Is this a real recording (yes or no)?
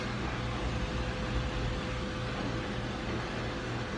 yes